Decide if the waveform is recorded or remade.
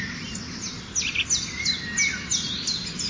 recorded